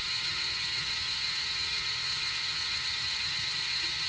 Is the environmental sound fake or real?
fake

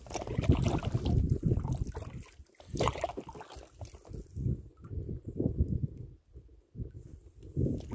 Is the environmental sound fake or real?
real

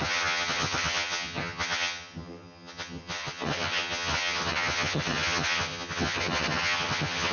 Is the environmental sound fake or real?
fake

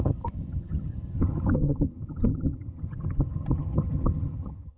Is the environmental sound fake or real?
fake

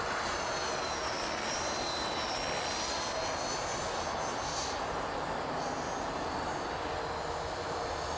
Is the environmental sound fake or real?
real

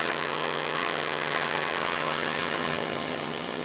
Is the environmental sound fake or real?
fake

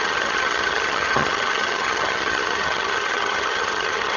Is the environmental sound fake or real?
fake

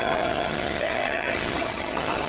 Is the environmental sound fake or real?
fake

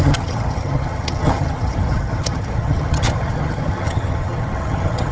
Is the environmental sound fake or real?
fake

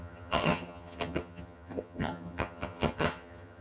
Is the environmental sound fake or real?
fake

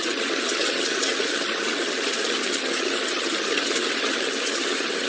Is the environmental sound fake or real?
fake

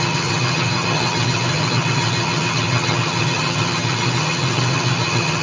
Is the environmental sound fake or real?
fake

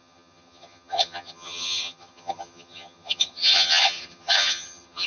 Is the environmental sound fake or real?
fake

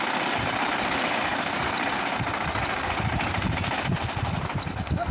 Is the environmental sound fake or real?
real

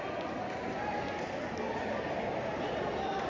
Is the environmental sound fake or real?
real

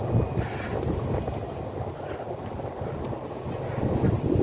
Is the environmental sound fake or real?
real